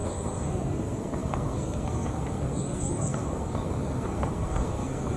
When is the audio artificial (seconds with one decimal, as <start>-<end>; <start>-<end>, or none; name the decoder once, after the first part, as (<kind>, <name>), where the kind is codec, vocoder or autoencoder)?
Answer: 0.0-5.2 (codec, SNAC)